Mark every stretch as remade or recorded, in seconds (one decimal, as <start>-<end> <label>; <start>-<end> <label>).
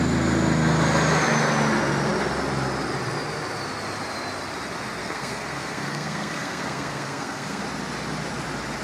0.0-5.0 recorded; 5.0-7.6 remade; 7.6-8.8 recorded